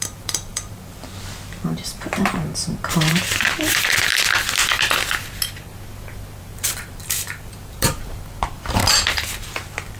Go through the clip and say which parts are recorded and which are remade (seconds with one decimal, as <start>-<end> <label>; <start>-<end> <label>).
0.0-4.1 remade; 4.1-6.4 recorded; 6.4-8.8 remade; 8.8-9.4 recorded; 9.4-10.0 remade

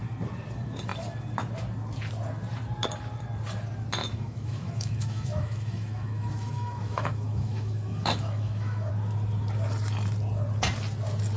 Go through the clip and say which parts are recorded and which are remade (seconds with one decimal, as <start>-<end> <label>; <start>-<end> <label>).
0.0-4.0 recorded; 4.0-8.9 remade; 8.9-11.4 recorded

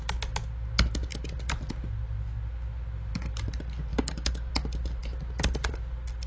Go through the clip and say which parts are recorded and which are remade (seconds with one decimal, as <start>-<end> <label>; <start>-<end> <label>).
0.0-3.9 recorded; 3.9-4.5 remade; 4.5-6.3 recorded